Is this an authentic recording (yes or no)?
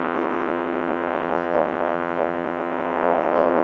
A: no